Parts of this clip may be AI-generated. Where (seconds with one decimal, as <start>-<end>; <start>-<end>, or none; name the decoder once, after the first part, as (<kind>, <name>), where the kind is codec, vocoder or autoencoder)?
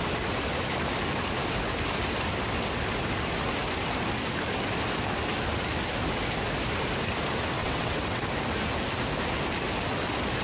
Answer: 7.6-8.2 (vocoder, WaveNeXt)